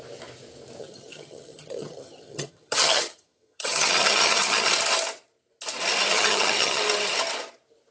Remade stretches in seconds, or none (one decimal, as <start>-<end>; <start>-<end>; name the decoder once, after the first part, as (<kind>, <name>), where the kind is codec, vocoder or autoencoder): 0.8-4.7 (vocoder, HiFi-GAN); 6.1-6.8